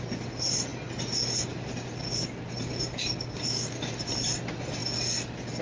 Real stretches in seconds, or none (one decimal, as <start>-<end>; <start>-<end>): 0.0-5.6